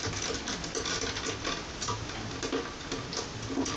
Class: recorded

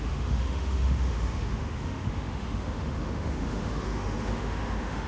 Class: remade